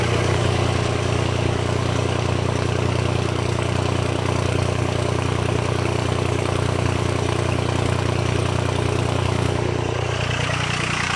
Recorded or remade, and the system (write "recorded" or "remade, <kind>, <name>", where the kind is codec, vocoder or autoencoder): remade, codec, DAC